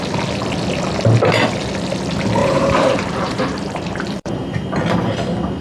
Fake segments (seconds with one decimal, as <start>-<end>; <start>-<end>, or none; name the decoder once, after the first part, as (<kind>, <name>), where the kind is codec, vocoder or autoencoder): 2.4-4.8 (vocoder, BigVGAN v2)